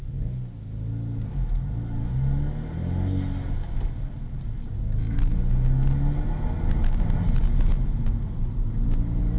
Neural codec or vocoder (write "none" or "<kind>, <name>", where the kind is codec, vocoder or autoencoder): none